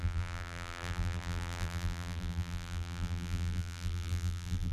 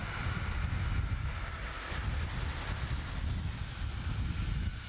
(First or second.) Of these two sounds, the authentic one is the second